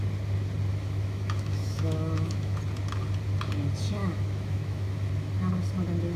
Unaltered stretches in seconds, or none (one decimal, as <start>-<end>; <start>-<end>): 0.0-0.7; 2.6-4.0; 5.1-6.2